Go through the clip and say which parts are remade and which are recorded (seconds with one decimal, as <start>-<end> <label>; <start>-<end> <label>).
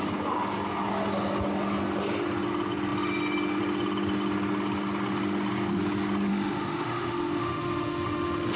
0.0-6.3 recorded; 6.3-8.6 remade